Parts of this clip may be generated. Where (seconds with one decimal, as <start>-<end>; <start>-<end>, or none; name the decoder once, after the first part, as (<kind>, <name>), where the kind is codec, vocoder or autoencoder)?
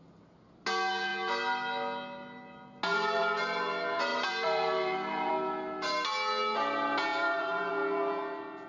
4.1-5.3 (vocoder, BigVGAN v2); 7.1-7.7